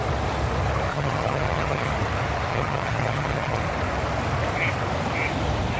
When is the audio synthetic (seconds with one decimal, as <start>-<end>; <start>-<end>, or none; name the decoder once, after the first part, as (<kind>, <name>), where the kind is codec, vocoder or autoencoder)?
0.9-1.9 (vocoder, HiFi-GAN); 2.5-3.6